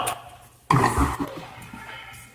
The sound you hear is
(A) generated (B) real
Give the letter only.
B